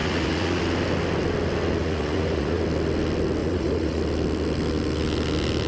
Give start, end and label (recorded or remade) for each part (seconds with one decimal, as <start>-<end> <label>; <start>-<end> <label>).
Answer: 0.0-0.6 remade; 0.6-1.8 recorded; 1.8-2.6 remade; 2.6-3.4 recorded; 3.4-4.0 remade; 4.0-5.7 recorded